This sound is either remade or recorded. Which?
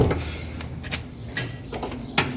recorded